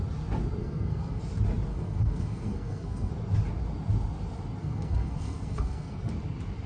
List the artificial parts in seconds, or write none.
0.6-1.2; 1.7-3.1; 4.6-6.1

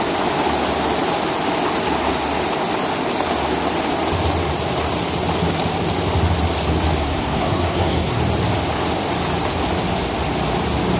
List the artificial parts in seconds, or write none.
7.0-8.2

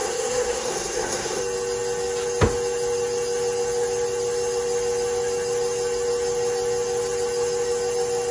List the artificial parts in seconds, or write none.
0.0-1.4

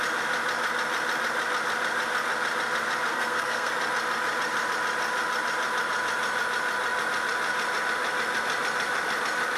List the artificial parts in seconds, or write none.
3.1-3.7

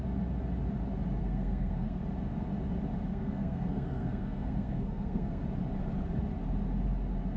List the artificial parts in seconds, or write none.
1.2-2.0; 3.1-5.4

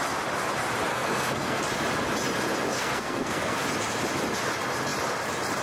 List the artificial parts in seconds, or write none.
0.9-1.6; 2.7-3.6